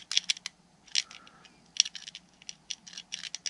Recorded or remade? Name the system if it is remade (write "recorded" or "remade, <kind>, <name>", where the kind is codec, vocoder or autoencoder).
recorded